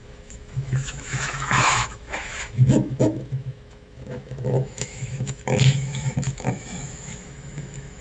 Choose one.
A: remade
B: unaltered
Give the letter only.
A